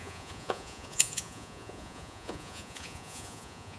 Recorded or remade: remade